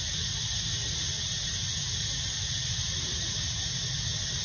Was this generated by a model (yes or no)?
no